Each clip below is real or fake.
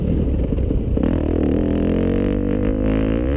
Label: real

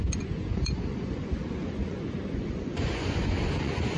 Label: fake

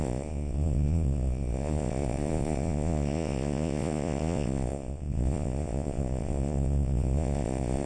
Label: fake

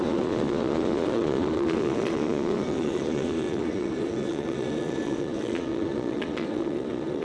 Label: fake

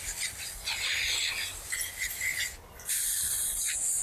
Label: real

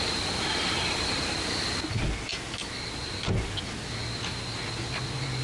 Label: real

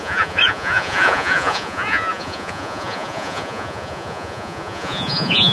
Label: fake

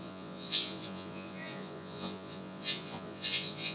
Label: fake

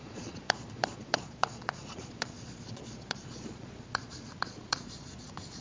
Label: fake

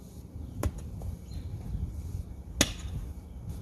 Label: real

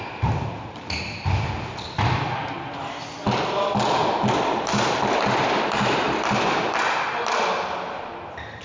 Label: real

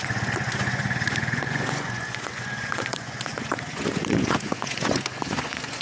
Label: fake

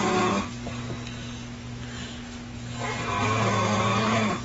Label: real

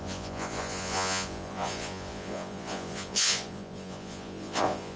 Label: fake